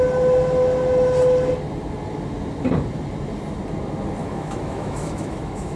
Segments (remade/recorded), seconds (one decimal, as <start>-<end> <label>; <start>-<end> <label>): 0.0-4.2 recorded; 4.2-5.8 remade

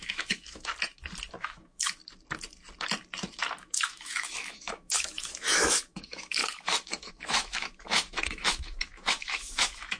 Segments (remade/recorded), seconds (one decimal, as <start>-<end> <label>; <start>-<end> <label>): 0.0-0.7 remade; 0.7-1.4 recorded; 1.4-2.0 remade; 2.0-3.6 recorded; 3.6-10.0 remade

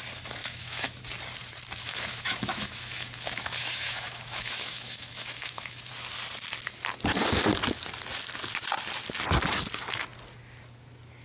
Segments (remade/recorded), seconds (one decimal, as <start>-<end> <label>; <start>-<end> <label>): 0.0-0.4 recorded; 0.4-1.0 remade; 1.0-1.8 recorded; 1.8-5.9 remade; 5.9-11.2 recorded

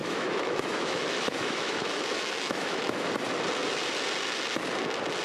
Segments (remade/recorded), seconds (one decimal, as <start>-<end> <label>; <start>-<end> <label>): 0.0-3.1 remade; 3.1-5.2 recorded

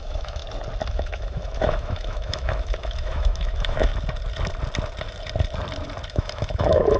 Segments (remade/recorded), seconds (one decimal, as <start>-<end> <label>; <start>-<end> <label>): 0.0-0.4 remade; 0.4-0.9 recorded; 0.9-3.9 remade; 3.9-6.1 recorded; 6.1-7.0 remade

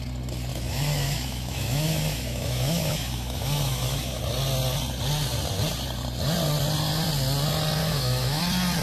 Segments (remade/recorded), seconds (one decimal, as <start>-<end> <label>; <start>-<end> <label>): 0.0-0.5 recorded; 0.5-4.2 remade; 4.2-7.8 recorded; 7.8-8.4 remade; 8.4-8.8 recorded

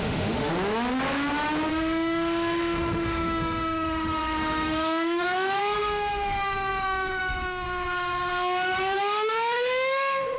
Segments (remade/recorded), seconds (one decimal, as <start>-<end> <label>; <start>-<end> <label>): 0.0-0.5 remade; 0.5-1.7 recorded; 1.7-10.4 remade